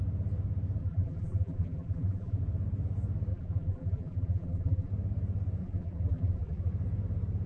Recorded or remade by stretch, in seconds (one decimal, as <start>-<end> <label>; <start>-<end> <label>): 0.0-0.8 recorded; 0.8-2.4 remade; 2.4-3.3 recorded; 3.3-4.9 remade; 4.9-5.6 recorded; 5.6-6.7 remade; 6.7-7.5 recorded